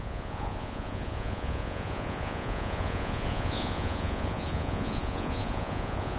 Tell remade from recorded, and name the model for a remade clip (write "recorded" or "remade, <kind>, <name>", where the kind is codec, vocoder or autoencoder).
remade, vocoder, Vocos